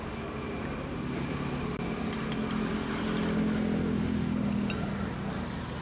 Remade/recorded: recorded